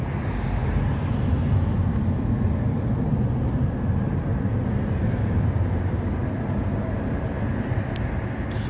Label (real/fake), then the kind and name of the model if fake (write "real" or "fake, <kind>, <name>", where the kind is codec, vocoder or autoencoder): real